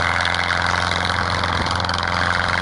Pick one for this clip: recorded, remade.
recorded